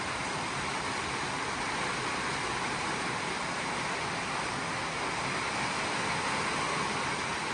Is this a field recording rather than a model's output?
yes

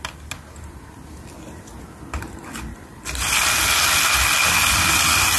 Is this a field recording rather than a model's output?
yes